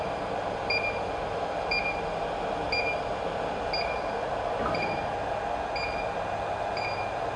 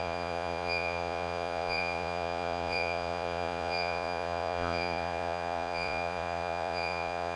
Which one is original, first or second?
first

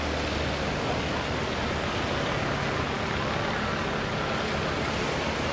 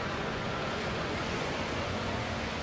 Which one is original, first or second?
first